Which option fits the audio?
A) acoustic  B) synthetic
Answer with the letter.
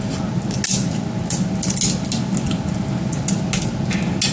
A